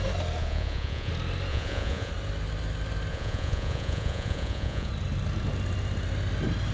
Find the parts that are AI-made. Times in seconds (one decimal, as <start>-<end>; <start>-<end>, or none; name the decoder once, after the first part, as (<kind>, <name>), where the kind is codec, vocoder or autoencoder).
0.4-1.1 (vocoder, Vocos); 1.5-2.1; 3.1-4.9